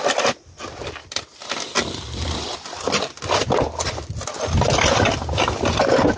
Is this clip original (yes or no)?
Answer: no